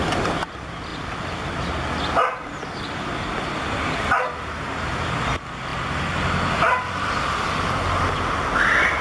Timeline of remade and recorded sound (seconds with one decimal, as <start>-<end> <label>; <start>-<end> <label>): 0.0-9.0 recorded